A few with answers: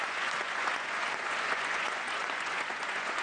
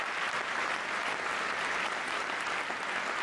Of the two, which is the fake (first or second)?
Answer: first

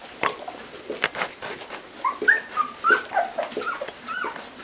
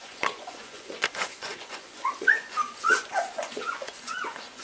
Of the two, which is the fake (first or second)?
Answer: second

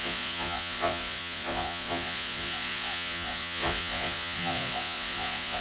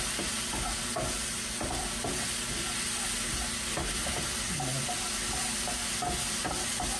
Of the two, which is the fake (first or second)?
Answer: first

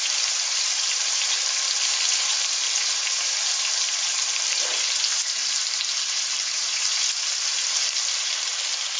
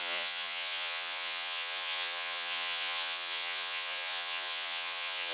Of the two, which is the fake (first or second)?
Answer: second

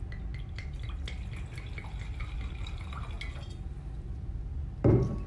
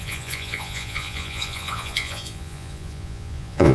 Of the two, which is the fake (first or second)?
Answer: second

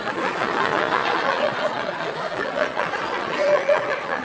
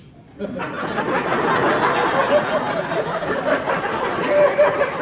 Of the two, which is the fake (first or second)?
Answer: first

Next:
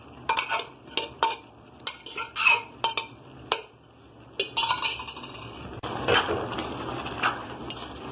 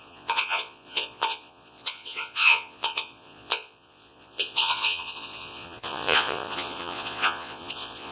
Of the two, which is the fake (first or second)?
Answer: second